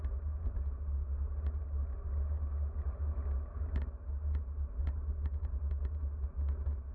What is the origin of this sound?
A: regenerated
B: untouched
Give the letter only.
B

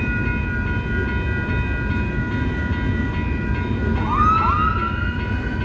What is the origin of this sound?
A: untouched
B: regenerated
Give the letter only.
A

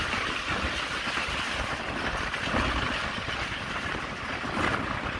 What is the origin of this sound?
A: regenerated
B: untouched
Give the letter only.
B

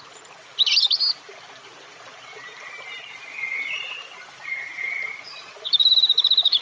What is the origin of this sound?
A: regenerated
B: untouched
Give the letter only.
A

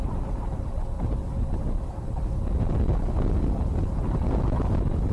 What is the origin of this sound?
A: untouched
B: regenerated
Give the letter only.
A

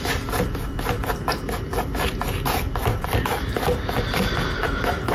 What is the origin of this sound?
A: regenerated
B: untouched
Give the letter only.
B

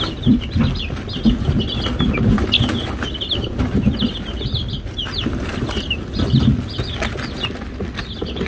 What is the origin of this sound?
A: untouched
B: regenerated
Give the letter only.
A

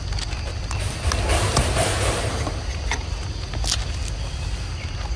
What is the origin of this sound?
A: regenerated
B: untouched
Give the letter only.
B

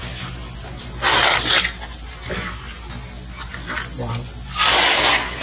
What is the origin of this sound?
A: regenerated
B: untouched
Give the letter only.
B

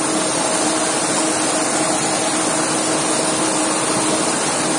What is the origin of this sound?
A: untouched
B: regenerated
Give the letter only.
A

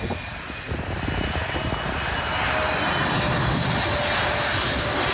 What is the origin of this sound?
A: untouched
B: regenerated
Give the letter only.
A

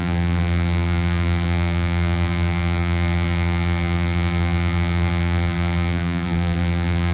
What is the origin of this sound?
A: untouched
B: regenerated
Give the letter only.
B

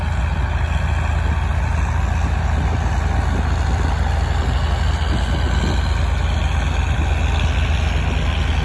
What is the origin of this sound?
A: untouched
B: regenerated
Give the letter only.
A